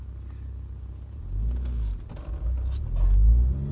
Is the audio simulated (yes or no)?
no